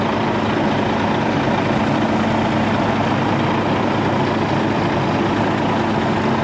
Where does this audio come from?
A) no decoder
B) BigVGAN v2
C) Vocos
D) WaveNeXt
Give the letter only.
A